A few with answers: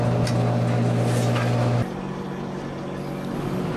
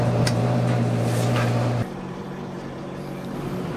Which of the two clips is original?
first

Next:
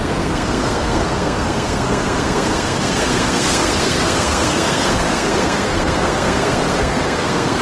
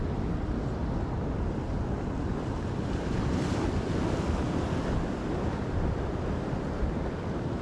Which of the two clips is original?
second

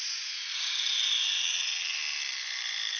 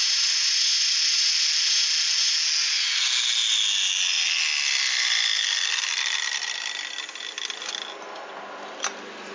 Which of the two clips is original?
second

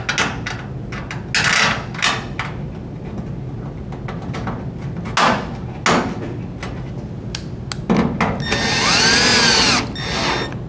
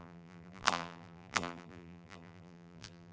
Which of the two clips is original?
first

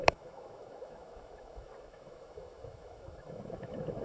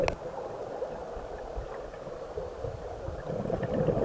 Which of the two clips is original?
second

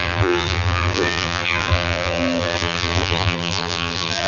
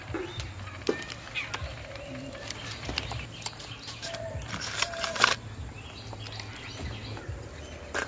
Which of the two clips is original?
second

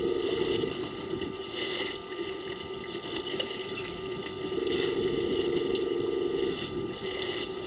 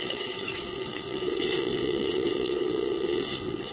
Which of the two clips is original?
first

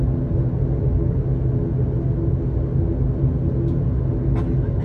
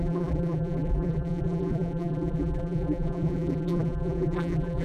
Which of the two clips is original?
first